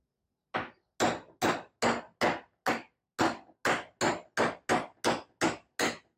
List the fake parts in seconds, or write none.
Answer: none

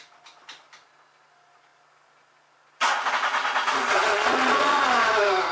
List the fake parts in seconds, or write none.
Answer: 4.0-4.8 (vocoder, Vocos)

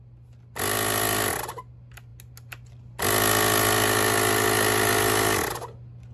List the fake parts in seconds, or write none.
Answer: none